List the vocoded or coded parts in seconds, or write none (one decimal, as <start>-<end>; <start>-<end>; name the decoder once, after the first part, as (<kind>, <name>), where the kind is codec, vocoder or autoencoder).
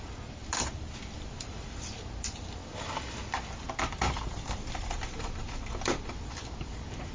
0.0-7.1 (vocoder, BigVGAN v2)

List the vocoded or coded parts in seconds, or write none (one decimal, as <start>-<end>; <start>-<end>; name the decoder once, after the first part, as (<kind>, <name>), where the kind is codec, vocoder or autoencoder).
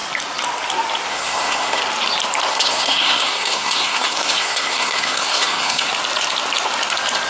1.1-1.8 (codec, SNAC); 2.5-5.9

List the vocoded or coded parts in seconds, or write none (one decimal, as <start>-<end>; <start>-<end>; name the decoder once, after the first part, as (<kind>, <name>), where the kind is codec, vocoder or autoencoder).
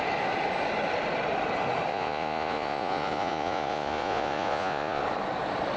1.9-5.0 (vocoder, Vocos)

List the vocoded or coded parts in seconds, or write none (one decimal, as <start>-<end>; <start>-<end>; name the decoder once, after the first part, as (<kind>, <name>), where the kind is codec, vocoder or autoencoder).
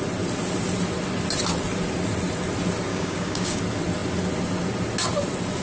2.9-3.6 (codec, DAC)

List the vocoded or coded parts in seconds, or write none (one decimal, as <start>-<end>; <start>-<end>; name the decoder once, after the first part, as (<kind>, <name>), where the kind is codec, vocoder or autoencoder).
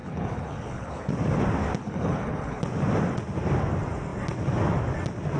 0.0-1.1 (codec, HILCodec); 1.8-2.6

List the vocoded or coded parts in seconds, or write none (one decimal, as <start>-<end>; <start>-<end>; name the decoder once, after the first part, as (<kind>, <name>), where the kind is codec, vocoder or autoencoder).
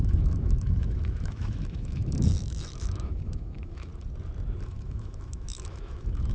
0.0-3.9 (autoencoder, DAC-VAE); 4.6-6.3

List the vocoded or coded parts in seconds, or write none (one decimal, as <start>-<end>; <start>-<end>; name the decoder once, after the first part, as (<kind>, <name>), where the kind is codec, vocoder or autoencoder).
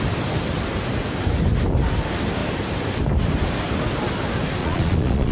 4.6-5.3 (vocoder, Vocos)